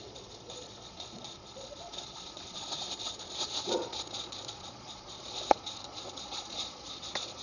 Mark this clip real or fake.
fake